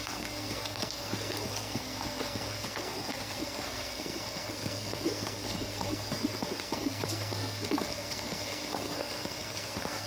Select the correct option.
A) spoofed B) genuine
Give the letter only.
A